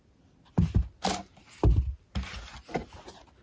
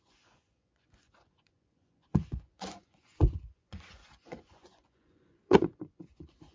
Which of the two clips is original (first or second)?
first